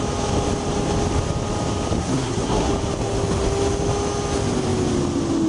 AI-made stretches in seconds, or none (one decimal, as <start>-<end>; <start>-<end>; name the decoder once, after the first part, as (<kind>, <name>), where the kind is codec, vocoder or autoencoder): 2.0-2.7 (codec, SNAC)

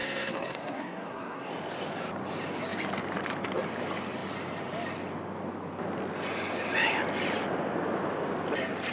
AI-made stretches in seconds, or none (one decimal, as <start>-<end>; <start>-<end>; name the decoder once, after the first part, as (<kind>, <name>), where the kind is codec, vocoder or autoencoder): 0.0-1.5 (codec, SNAC)

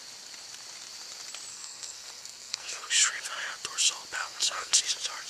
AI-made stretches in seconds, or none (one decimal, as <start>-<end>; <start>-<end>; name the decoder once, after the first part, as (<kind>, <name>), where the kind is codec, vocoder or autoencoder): 1.5-2.9 (codec, SNAC); 4.2-4.8

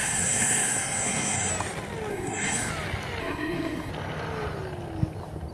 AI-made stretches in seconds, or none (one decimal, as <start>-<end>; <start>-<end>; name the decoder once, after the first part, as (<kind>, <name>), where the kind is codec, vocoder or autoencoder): 0.0-1.5 (codec, SNAC); 2.1-2.7; 3.2-3.9

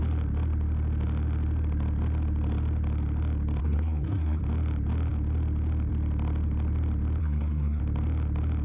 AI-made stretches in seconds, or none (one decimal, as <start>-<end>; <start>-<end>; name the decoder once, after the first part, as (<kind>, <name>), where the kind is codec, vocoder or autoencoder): 3.6-4.4 (codec, SNAC); 7.2-7.8

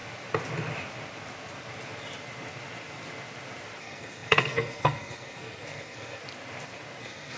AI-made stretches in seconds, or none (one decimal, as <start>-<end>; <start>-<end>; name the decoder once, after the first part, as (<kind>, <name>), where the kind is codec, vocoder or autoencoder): 3.8-6.2 (codec, SNAC); 7.0-7.4

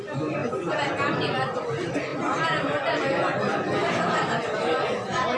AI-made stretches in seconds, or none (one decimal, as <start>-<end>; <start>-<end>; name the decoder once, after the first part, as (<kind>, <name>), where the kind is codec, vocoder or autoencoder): none